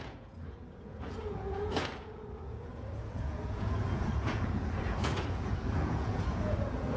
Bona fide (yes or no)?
no